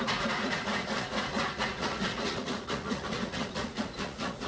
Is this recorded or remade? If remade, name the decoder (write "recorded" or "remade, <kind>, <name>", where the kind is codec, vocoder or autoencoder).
remade, vocoder, Vocos